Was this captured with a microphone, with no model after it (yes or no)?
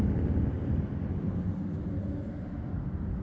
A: yes